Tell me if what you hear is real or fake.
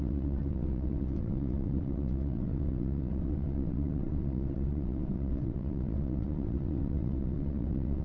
fake